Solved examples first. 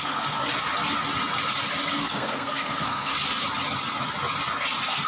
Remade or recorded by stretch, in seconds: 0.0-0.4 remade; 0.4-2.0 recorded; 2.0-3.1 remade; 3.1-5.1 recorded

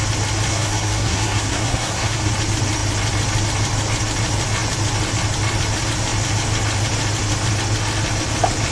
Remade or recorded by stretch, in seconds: 0.0-0.5 recorded; 0.5-2.3 remade; 2.3-8.7 recorded

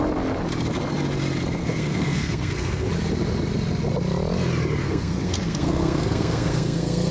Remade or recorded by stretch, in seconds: 0.0-1.6 recorded; 1.6-2.9 remade; 2.9-4.8 recorded; 4.8-7.1 remade

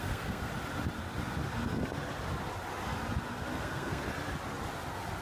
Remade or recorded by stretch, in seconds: 0.0-0.5 remade; 0.5-3.6 recorded; 3.6-4.1 remade; 4.1-5.2 recorded

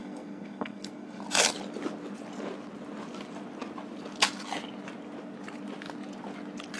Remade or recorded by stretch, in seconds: 0.0-1.2 remade; 1.2-6.8 recorded

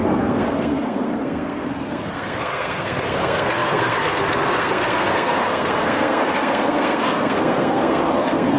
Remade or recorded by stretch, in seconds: 0.0-8.6 remade

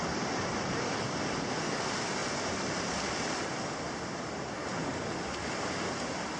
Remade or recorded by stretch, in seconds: 0.0-6.4 recorded